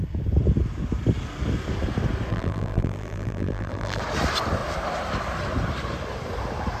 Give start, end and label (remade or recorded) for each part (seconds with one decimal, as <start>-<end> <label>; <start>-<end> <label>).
0.0-2.3 recorded; 2.3-4.0 remade; 4.0-6.8 recorded